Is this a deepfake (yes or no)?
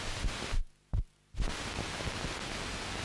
no